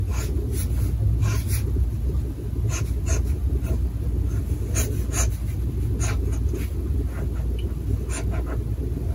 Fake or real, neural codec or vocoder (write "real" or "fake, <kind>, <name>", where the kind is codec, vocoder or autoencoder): real